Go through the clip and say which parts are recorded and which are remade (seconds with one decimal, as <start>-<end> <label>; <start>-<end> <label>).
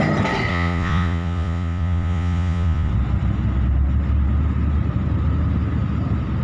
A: 0.0-0.5 recorded; 0.5-2.9 remade; 2.9-6.4 recorded